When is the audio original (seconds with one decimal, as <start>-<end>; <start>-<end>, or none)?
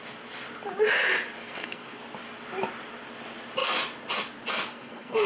0.0-1.4; 2.0-4.7